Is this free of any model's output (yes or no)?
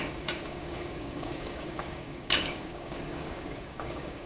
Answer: no